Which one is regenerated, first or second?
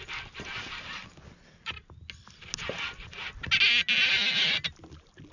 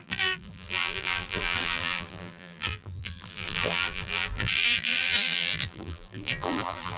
second